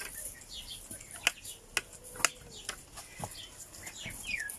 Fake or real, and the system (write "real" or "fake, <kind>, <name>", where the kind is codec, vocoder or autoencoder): real